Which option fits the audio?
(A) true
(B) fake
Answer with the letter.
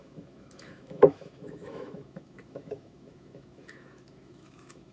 B